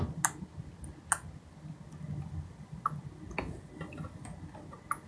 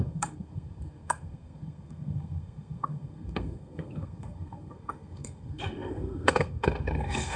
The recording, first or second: first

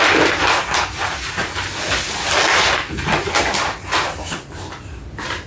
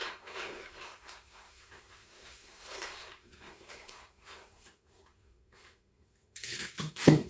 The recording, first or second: first